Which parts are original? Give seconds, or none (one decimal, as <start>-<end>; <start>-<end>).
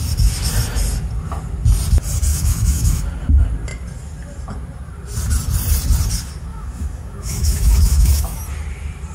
0.0-2.3; 3.0-6.5; 8.4-9.1